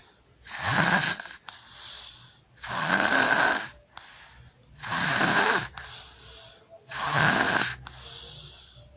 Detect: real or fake real